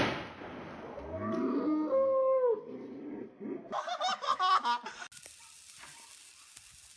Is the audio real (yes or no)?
yes